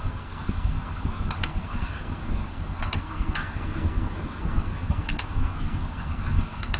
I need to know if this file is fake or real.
fake